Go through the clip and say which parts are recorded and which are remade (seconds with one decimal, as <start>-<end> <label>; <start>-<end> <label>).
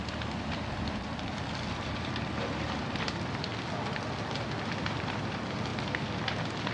0.0-3.5 remade; 3.5-4.8 recorded; 4.8-5.7 remade; 5.7-6.7 recorded